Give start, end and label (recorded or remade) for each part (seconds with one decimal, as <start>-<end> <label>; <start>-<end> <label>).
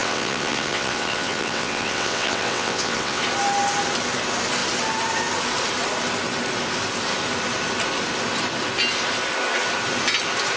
0.0-3.2 remade; 3.2-10.6 recorded